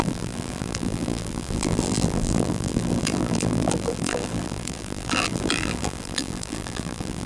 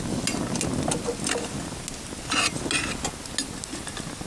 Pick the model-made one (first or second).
first